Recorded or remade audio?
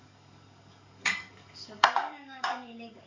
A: remade